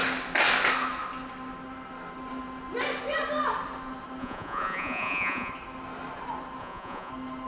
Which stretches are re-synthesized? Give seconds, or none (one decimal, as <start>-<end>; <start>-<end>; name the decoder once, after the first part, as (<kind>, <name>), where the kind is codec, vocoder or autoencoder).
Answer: 4.2-5.5 (vocoder, Vocos); 6.6-7.1